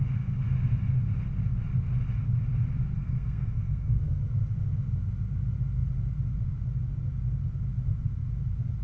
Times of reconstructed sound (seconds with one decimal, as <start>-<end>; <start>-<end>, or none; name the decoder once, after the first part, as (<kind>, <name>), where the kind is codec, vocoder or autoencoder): 3.0-4.2 (codec, SNAC)